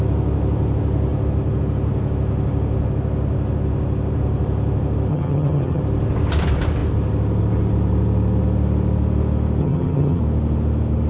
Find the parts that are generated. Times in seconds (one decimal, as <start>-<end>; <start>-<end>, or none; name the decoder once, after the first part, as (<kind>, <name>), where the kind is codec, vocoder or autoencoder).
5.1-5.8 (vocoder, HiFi-GAN); 9.6-10.2